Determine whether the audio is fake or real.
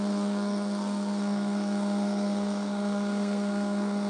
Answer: fake